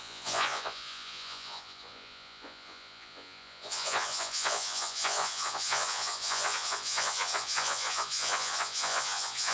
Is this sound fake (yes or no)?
yes